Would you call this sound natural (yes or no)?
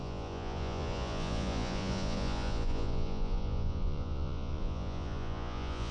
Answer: no